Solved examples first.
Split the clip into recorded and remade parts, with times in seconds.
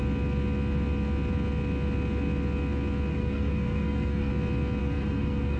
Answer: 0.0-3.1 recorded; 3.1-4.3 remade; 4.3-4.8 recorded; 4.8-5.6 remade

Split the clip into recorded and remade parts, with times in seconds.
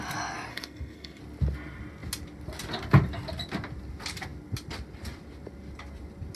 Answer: 0.0-0.5 recorded; 0.5-1.2 remade; 1.2-6.4 recorded